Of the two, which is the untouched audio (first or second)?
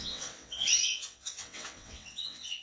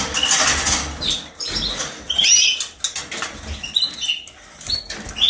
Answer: second